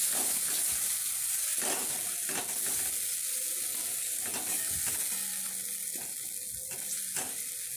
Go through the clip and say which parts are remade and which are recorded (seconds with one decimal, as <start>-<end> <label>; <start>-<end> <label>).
0.0-7.8 recorded